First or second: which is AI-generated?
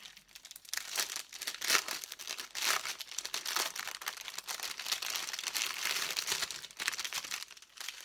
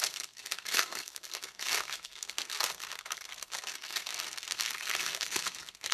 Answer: second